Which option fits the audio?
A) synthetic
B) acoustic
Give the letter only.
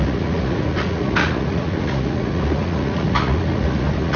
A